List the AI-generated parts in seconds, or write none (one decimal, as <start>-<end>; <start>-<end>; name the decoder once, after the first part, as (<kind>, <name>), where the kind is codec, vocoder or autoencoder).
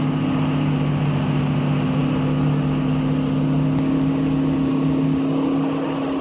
none